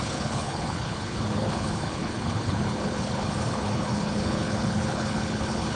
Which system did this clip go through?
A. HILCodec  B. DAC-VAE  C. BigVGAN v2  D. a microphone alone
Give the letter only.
A